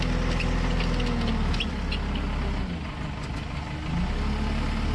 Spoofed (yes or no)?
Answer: no